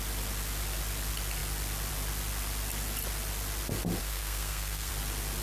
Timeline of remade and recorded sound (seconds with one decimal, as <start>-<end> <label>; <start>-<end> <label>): 0.0-4.0 recorded; 4.0-4.9 remade; 4.9-5.4 recorded